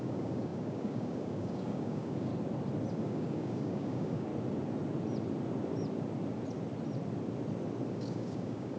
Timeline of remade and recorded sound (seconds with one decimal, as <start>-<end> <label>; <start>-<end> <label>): 0.0-2.3 remade; 2.3-2.9 recorded; 2.9-4.3 remade; 4.3-7.9 recorded; 7.9-8.8 remade